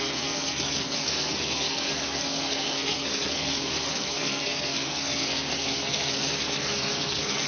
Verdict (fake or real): fake